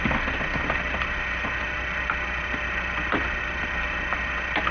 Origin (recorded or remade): recorded